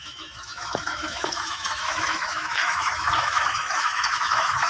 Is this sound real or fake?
fake